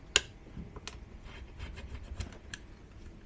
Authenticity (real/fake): real